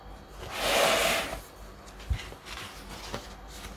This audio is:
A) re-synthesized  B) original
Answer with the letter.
B